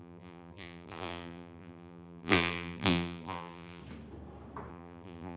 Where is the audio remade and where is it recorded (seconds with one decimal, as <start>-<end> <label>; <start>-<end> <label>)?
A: 0.0-3.8 remade; 3.8-4.7 recorded; 4.7-5.4 remade